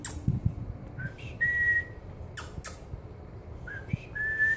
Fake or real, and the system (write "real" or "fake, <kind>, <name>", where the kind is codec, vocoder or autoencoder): real